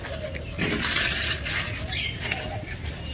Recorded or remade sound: recorded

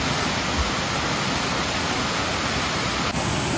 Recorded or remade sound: recorded